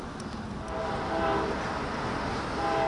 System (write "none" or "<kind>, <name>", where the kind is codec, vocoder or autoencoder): none